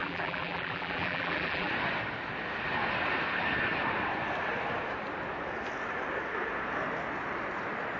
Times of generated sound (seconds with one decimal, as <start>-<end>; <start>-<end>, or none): 0.0-1.7